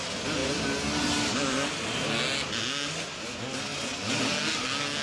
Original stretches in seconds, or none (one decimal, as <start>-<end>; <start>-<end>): 0.0-5.0